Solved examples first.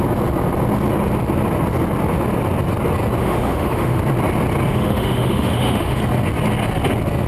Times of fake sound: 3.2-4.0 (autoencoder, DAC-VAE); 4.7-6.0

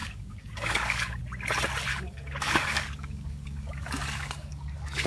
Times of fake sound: 0.0-1.2 (codec, DAC); 1.9-5.1

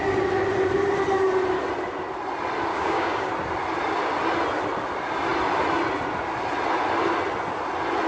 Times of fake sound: 2.7-3.3 (codec, DAC)